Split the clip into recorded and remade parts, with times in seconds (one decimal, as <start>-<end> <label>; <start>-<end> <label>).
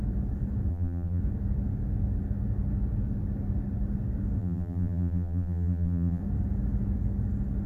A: 0.0-0.7 recorded; 0.7-1.2 remade; 1.2-4.4 recorded; 4.4-6.2 remade; 6.2-7.7 recorded